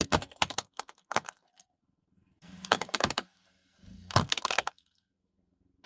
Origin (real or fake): fake